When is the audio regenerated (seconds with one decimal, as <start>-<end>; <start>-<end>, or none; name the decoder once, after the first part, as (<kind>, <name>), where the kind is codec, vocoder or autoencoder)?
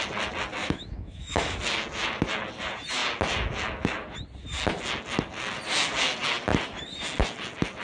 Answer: 0.6-1.6 (autoencoder, DAC-VAE)